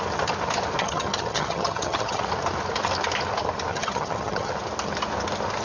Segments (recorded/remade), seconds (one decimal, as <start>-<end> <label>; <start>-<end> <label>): 0.0-0.8 recorded; 0.8-2.2 remade; 2.2-3.7 recorded; 3.7-4.5 remade; 4.5-5.6 recorded